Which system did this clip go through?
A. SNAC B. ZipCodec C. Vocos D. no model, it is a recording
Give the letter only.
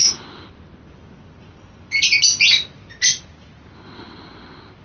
D